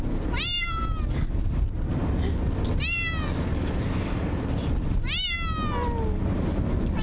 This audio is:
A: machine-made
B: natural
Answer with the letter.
B